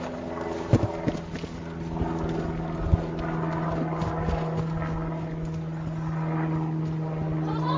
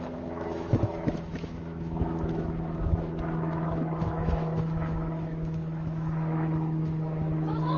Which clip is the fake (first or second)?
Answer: second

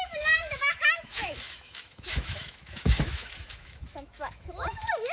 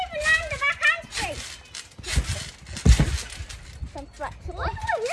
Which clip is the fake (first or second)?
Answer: first